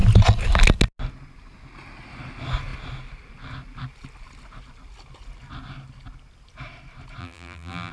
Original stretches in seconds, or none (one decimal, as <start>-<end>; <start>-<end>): 0.0-7.2